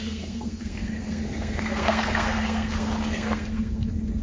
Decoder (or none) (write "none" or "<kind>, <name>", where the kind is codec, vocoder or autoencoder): codec, SNAC